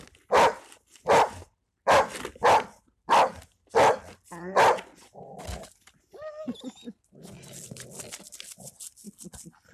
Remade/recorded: recorded